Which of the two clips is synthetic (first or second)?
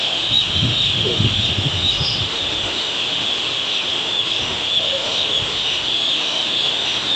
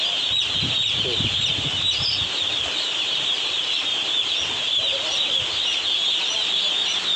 first